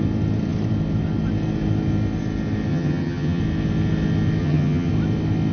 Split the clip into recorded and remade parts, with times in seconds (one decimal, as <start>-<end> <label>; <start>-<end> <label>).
0.0-2.7 recorded; 2.7-3.4 remade; 3.4-4.4 recorded; 4.4-4.9 remade; 4.9-5.5 recorded